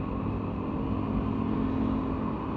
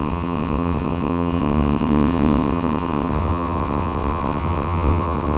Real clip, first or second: first